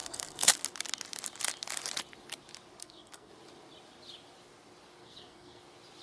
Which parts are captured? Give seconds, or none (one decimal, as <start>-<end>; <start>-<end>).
0.5-2.8; 3.3-5.0; 5.6-6.0